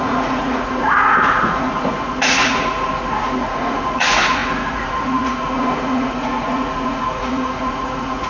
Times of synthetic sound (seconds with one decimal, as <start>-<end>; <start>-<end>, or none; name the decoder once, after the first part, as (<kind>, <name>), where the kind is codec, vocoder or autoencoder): 0.0-8.3 (vocoder, Vocos)